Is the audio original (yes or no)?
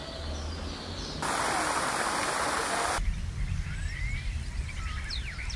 yes